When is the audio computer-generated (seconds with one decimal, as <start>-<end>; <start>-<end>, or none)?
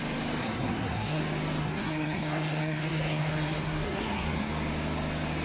0.4-1.2; 1.6-4.5